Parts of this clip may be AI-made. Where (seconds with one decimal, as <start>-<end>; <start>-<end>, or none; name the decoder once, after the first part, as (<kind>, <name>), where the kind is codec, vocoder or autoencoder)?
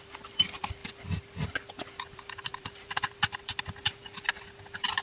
0.0-5.0 (vocoder, BigVGAN v2)